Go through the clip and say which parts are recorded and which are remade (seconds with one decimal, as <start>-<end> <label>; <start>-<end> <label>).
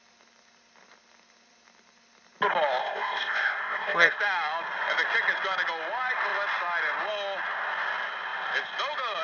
0.0-2.8 recorded; 2.8-4.2 remade; 4.2-9.2 recorded